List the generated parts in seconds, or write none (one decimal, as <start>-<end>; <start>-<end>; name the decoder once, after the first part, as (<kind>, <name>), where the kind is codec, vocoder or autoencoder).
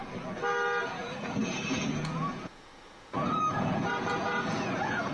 0.8-5.1 (vocoder, Vocos)